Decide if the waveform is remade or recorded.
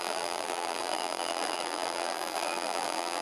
remade